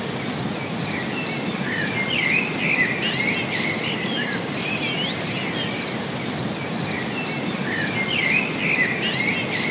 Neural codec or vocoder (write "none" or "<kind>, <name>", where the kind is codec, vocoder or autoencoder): none